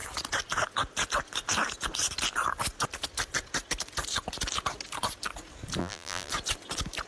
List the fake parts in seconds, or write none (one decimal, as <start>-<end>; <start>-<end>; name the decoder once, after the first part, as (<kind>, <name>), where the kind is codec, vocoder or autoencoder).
5.8-6.3 (vocoder, BigVGAN v2)